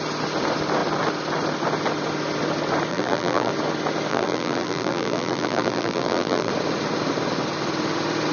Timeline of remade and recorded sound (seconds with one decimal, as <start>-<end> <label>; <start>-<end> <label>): 0.0-2.9 recorded; 2.9-3.5 remade; 3.5-4.1 recorded; 4.1-6.5 remade; 6.5-8.3 recorded